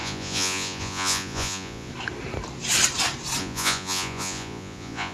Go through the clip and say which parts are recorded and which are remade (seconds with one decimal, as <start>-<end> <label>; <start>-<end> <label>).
0.0-1.9 remade; 1.9-3.4 recorded; 3.4-5.1 remade